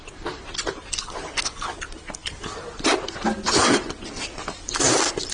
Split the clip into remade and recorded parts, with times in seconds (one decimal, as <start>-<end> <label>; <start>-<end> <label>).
0.0-5.3 recorded